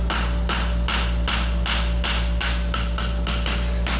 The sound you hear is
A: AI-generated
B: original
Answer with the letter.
B